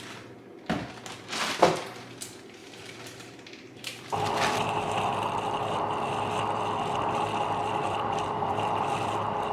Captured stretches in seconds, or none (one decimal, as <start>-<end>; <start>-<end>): 0.0-2.6; 4.8-7.8; 8.9-9.5